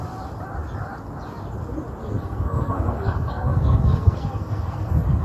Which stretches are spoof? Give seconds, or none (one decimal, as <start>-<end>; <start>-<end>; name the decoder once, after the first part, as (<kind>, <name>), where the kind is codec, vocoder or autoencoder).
2.0-5.2 (codec, SNAC)